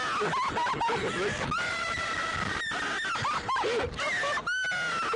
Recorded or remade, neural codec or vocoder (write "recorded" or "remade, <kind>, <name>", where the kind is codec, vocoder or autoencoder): recorded